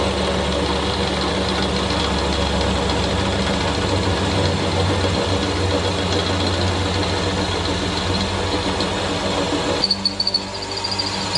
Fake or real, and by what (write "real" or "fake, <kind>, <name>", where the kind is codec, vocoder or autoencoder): real